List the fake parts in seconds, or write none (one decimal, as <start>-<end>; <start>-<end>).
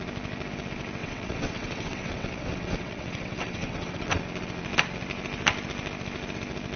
1.0-4.2